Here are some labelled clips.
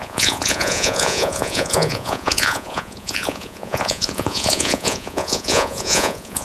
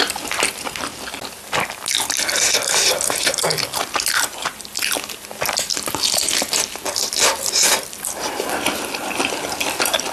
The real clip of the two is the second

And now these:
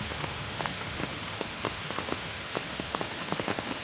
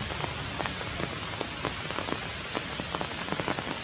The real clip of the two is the second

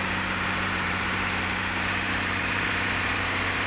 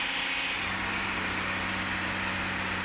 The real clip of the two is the second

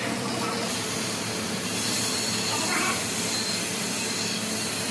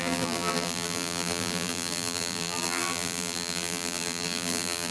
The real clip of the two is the first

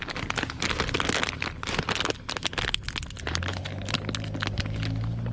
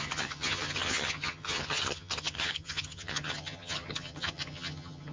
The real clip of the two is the first